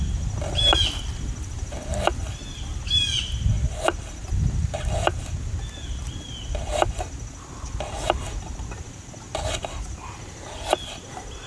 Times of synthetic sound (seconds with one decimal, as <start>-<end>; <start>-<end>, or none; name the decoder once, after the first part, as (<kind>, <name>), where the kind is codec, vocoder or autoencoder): none